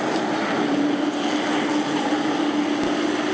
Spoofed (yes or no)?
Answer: no